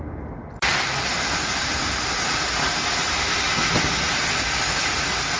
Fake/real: real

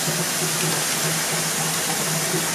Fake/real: real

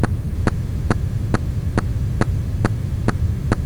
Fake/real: real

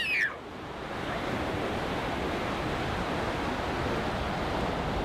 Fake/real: real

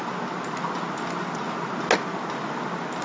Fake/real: real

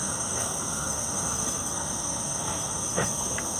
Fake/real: fake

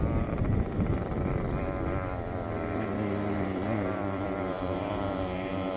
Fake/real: fake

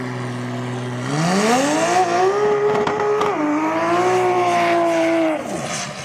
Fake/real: fake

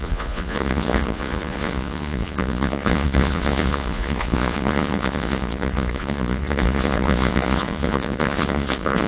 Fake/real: fake